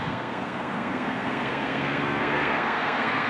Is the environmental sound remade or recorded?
remade